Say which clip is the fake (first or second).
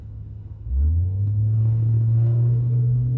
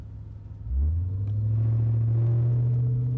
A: first